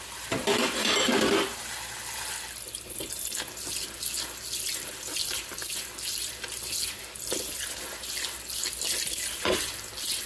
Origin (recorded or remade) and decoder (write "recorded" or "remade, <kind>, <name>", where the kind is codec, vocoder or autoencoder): recorded